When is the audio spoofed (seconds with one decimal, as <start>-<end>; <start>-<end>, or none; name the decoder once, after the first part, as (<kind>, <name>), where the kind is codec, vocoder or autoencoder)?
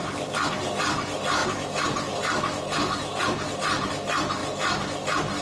0.0-0.5 (vocoder, BigVGAN v2)